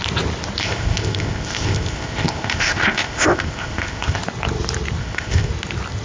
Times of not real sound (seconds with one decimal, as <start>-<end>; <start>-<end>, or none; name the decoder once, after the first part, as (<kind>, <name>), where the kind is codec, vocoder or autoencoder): 0.6-4.2 (codec, ZipCodec); 5.0-5.5